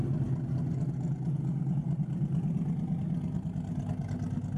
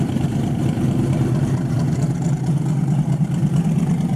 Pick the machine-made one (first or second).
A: second